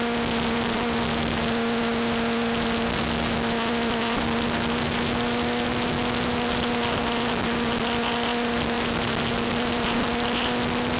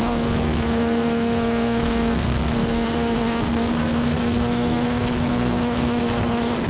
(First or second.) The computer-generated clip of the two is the second